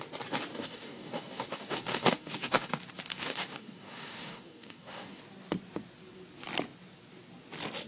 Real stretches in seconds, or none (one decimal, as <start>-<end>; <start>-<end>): 0.0-0.5; 2.7-3.1; 5.2-7.9